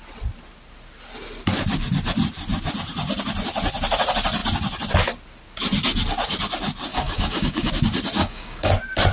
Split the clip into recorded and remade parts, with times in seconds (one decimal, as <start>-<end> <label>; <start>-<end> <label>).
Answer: 0.0-6.9 recorded; 6.9-7.7 remade; 7.7-8.2 recorded; 8.2-8.7 remade; 8.7-9.1 recorded